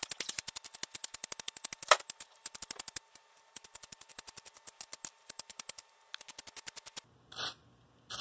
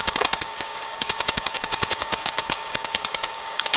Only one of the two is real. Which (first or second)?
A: first